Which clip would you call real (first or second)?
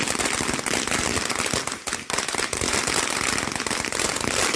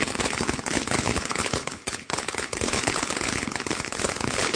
first